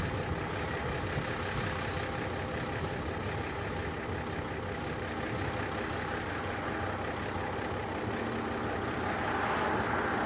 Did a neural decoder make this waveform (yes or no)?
no